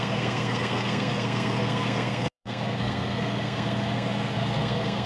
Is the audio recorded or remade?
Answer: remade